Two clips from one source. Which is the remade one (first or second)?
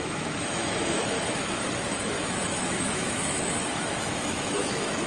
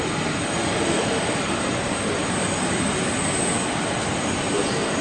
first